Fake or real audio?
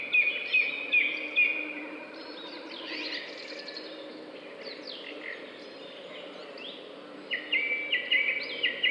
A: real